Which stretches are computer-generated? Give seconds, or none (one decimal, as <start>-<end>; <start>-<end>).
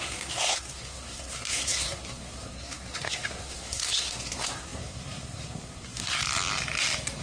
0.0-6.2